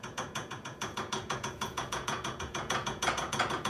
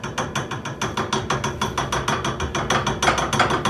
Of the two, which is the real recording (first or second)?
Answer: second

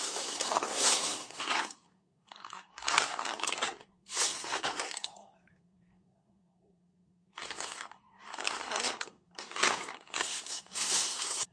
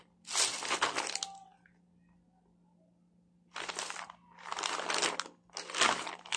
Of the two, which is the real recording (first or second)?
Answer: second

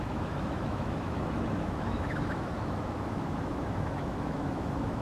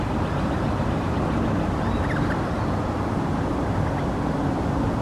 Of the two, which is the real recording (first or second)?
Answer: second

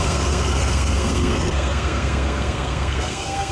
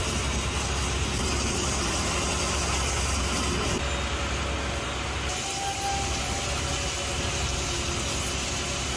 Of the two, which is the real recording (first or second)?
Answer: second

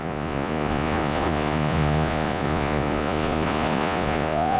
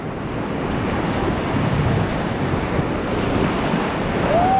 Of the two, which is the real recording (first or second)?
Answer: second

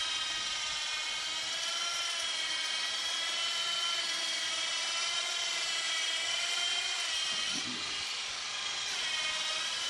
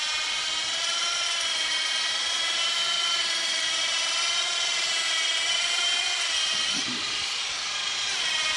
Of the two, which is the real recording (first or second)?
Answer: first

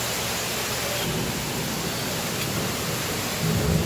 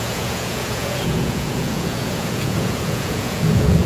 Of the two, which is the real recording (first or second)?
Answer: first